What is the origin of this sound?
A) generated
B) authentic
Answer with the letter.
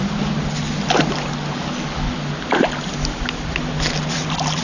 B